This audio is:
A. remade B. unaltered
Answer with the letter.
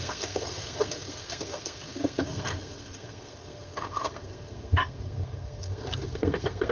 A